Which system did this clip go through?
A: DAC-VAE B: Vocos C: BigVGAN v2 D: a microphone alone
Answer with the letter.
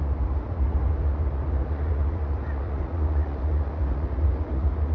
B